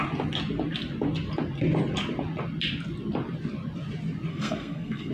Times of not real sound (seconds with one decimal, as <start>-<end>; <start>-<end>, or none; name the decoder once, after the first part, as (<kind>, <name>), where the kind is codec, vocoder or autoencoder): 4.3-5.1 (codec, SNAC)